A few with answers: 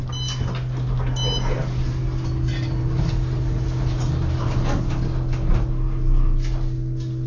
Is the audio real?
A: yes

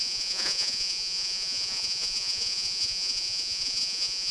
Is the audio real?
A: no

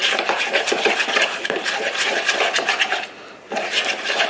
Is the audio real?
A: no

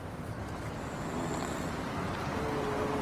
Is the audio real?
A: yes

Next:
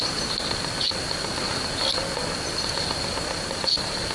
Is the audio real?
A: yes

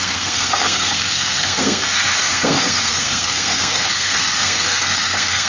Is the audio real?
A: no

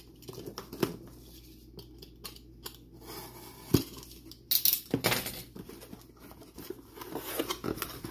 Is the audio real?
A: yes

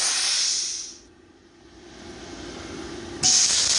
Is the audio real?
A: yes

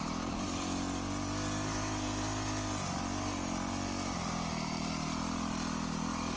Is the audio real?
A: yes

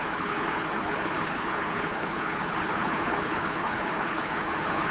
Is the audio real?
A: no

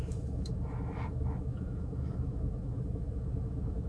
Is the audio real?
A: no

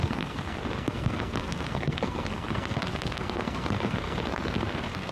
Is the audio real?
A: no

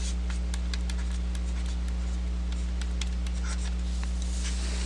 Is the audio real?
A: yes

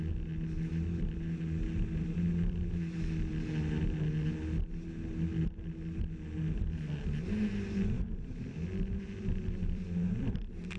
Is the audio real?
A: yes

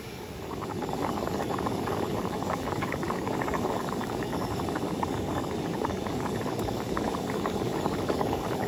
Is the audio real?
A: no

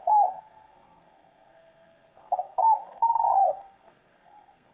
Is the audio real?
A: no